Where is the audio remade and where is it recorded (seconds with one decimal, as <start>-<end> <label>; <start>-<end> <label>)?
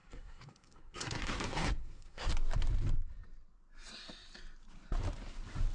0.0-2.3 remade; 2.3-5.7 recorded